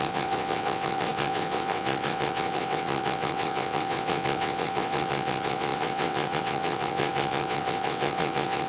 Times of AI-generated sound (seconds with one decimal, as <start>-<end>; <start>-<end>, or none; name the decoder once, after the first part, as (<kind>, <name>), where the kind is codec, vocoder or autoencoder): 0.0-8.7 (vocoder, WaveNeXt)